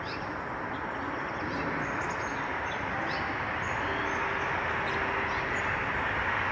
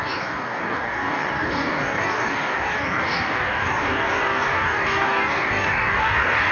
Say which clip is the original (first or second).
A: first